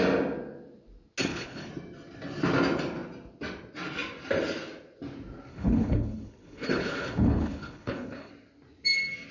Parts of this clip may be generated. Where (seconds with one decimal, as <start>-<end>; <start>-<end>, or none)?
1.2-1.7; 5.5-8.3